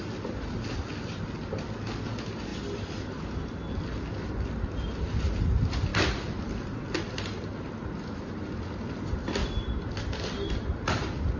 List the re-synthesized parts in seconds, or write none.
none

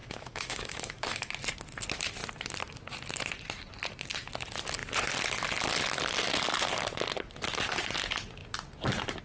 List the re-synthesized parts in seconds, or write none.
0.0-1.3 (autoencoder, DAC-VAE)

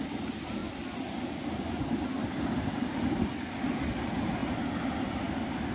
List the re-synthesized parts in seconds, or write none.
none

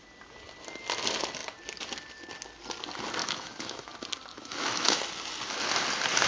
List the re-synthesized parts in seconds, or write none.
3.2-3.9 (autoencoder, DAC-VAE); 4.3-5.0